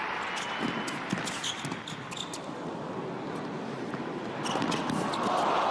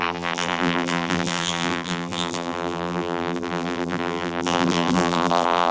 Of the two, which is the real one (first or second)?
first